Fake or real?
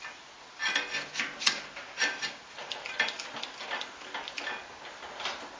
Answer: real